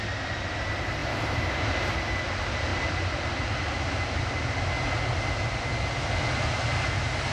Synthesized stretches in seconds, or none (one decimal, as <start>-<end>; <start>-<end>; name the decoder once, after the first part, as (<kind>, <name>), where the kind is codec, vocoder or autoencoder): 1.0-1.9 (vocoder, BigVGAN v2)